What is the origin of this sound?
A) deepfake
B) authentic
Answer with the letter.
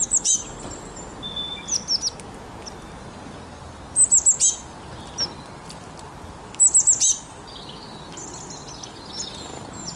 B